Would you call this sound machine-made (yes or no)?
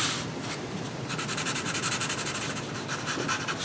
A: yes